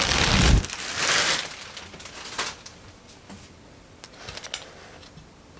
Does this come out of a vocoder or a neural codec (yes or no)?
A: no